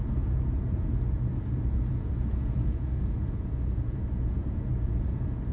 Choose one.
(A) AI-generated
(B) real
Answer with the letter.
A